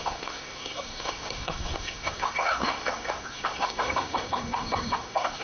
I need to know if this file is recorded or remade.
remade